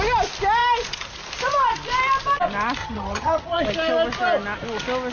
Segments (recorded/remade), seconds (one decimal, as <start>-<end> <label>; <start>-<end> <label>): 0.0-2.8 recorded; 2.8-3.6 remade; 3.6-5.1 recorded